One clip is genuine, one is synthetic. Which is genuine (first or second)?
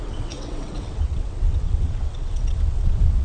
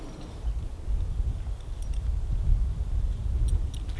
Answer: second